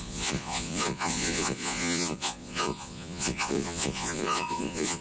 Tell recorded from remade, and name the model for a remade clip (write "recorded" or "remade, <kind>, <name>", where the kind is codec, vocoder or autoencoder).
remade, vocoder, Vocos